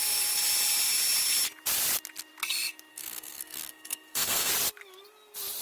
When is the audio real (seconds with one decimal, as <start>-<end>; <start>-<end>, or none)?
0.0-2.9; 4.5-5.6